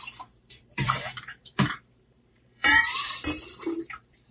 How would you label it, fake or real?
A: fake